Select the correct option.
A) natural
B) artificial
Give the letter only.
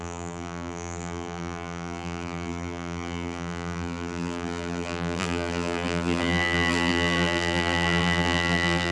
B